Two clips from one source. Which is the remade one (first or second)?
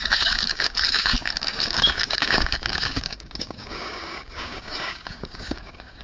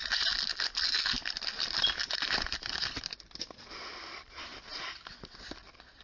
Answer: first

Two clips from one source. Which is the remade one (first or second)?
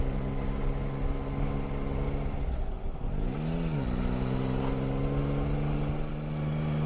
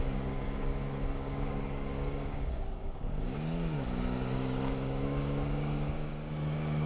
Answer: second